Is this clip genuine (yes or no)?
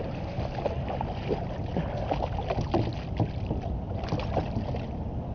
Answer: yes